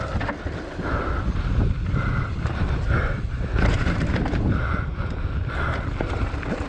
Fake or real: real